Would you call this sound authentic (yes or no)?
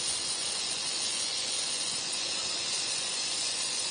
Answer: no